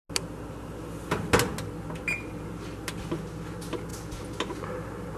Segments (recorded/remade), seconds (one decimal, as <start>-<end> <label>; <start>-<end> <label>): 0.0-5.2 recorded